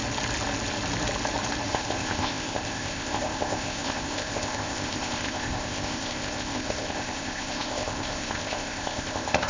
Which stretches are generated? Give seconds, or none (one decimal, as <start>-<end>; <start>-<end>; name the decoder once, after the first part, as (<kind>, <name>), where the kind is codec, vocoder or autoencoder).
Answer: 1.7-9.5 (codec, ZipCodec)